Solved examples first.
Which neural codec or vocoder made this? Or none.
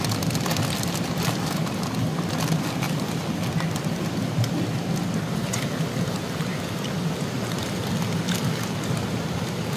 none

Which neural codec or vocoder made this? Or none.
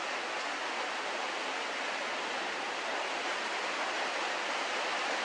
none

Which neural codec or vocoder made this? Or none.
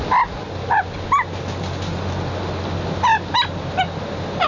none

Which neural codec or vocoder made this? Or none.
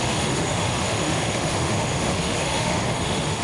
autoencoder, DAC-VAE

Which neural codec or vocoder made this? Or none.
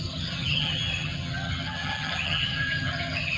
vocoder, HiFi-GAN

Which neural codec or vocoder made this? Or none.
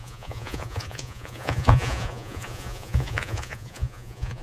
vocoder, Vocos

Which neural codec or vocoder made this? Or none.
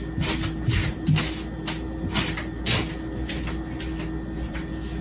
none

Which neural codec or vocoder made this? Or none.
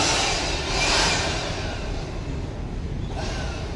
none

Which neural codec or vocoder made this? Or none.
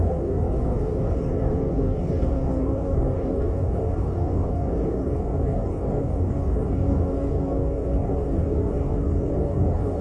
codec, DAC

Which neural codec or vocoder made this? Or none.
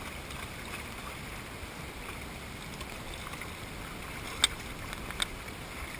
none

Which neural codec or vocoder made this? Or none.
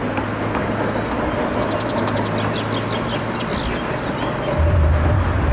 none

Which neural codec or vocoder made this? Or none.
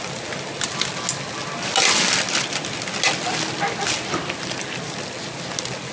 none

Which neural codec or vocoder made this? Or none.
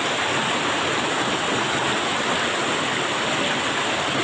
none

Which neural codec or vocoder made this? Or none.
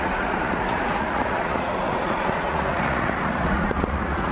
vocoder, Vocos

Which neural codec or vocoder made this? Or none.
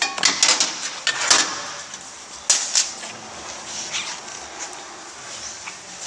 none